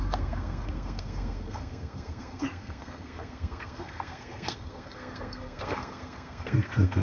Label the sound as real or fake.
fake